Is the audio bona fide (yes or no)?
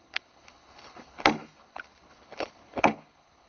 no